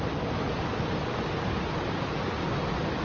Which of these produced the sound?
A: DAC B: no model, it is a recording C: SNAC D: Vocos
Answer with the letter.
B